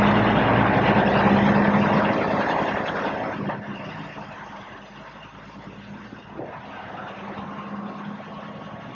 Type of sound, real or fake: real